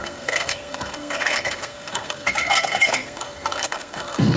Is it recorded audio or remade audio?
remade